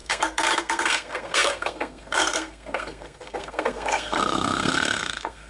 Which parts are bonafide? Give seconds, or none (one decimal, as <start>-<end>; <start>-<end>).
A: none